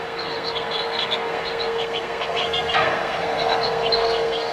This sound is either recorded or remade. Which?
remade